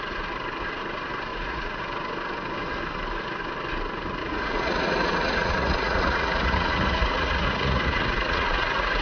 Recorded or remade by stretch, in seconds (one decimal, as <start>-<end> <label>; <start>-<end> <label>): 0.0-1.3 recorded; 1.3-1.8 remade; 1.8-4.2 recorded; 4.2-9.0 remade